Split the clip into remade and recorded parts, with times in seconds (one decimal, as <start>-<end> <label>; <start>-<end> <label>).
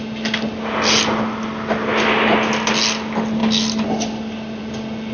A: 0.0-5.1 recorded